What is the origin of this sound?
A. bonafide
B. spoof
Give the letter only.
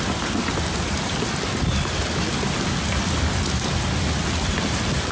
A